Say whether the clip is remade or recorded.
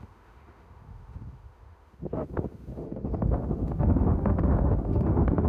remade